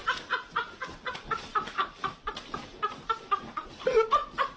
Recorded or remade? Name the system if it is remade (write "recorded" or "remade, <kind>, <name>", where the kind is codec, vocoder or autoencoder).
recorded